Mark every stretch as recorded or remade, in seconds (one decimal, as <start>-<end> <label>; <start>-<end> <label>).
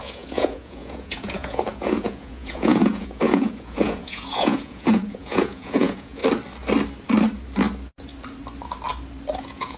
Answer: 0.0-6.2 remade; 6.2-9.4 recorded; 9.4-9.8 remade